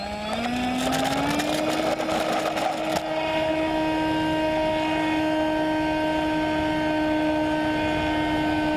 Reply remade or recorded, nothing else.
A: recorded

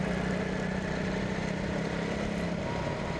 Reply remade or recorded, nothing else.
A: recorded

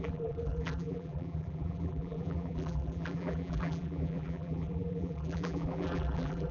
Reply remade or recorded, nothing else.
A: remade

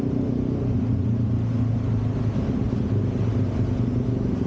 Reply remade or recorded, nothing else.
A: recorded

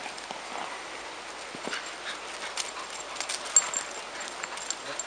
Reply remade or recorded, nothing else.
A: recorded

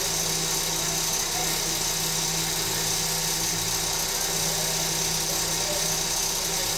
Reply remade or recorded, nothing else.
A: recorded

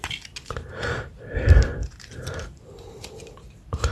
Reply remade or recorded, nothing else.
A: remade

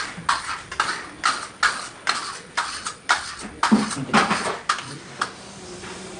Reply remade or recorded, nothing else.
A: recorded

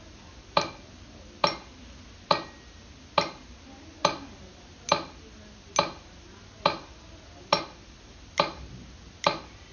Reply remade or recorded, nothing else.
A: recorded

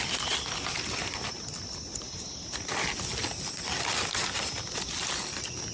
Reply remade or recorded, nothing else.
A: recorded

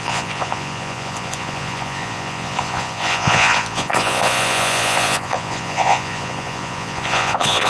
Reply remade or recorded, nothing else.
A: remade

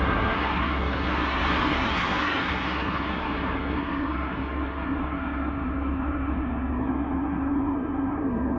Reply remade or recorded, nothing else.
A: remade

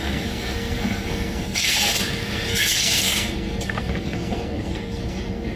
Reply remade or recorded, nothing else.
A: remade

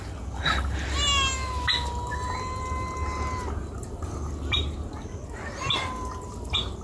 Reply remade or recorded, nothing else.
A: recorded